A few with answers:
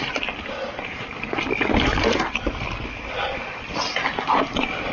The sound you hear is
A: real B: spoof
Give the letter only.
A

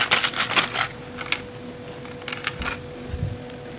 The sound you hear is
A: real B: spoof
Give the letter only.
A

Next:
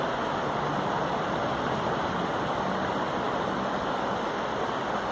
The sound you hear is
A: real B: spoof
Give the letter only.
A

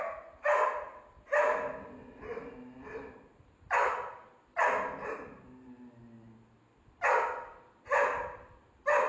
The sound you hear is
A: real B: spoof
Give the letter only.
A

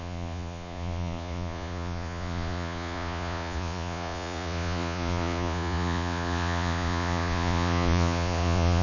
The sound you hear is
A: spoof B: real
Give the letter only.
A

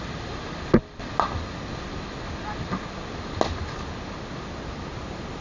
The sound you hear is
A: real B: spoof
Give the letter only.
A